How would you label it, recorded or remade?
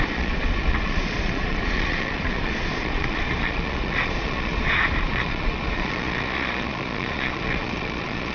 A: remade